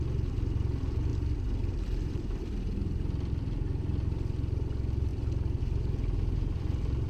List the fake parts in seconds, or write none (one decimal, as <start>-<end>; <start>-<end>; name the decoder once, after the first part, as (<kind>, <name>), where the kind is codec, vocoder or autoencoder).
none